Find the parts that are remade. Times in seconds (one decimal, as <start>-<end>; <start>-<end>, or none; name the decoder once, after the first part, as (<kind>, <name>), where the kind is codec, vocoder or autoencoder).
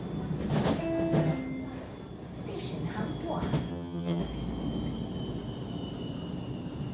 3.7-4.2 (vocoder, HiFi-GAN)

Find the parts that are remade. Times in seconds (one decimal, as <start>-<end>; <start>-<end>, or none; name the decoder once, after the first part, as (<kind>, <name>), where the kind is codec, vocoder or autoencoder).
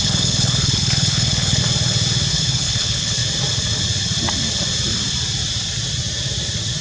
0.0-1.6 (codec, HILCodec); 2.3-3.2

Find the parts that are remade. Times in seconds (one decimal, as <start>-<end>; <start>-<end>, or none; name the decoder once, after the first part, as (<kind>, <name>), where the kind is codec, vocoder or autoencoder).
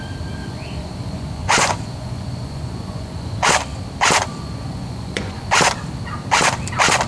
0.4-3.5 (vocoder, Vocos); 4.3-5.5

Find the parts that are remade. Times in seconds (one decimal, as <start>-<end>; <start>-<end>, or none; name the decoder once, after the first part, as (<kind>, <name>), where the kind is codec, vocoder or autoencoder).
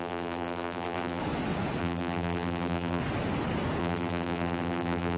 0.0-1.2 (vocoder, BigVGAN v2); 1.8-3.0; 3.8-5.2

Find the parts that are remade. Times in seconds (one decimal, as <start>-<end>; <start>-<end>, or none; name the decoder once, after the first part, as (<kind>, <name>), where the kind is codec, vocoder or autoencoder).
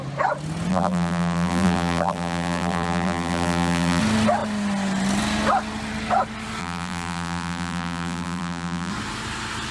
0.7-4.0 (vocoder, BigVGAN v2); 6.6-8.9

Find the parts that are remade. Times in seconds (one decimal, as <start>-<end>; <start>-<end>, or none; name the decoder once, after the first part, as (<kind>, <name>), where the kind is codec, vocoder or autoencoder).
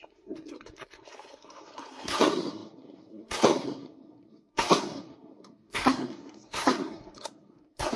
0.0-8.0 (codec, SNAC)